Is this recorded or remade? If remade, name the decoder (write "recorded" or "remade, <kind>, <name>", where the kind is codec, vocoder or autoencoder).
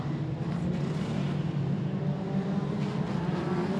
recorded